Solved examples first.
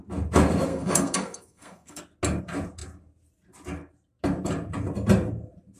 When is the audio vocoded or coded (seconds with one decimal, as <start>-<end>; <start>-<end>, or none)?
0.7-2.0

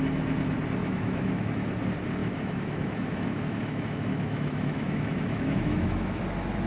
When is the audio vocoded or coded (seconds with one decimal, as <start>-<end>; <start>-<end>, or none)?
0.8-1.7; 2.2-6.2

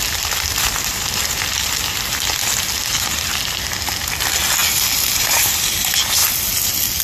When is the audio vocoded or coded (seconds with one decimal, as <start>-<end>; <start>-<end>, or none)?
none

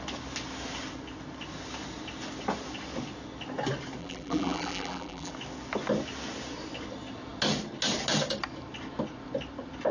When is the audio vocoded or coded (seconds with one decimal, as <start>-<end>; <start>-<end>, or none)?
4.0-5.3

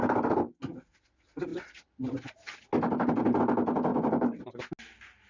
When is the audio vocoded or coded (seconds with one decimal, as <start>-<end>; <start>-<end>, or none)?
3.9-4.6

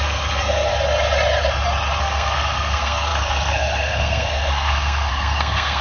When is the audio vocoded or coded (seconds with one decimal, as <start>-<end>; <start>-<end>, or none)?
0.0-0.7; 2.0-5.8

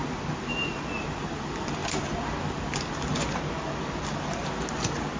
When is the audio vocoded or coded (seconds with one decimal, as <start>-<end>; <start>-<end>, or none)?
none